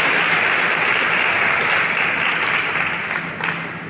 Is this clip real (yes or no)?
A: yes